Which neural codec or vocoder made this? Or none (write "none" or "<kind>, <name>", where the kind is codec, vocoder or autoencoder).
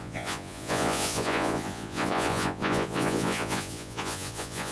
vocoder, Vocos